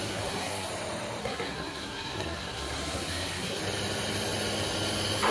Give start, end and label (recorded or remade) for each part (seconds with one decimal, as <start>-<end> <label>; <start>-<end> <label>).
0.0-0.7 remade; 0.7-1.2 recorded; 1.2-3.6 remade; 3.6-5.3 recorded